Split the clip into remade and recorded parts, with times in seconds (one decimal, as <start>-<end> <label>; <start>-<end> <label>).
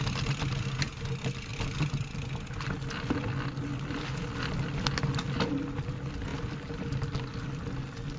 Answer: 0.0-1.5 recorded; 1.5-2.6 remade; 2.6-8.2 recorded